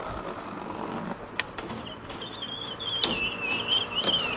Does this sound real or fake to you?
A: real